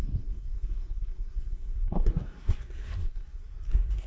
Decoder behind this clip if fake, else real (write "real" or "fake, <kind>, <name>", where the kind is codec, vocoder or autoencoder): fake, codec, SNAC